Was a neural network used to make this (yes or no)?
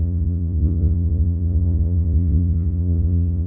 yes